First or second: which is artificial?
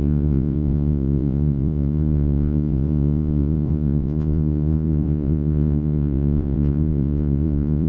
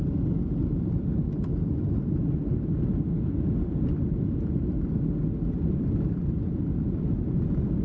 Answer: first